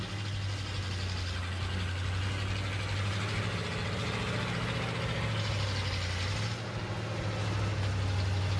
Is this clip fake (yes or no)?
no